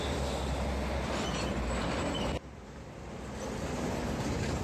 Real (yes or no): yes